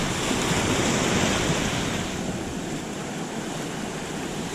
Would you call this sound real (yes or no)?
yes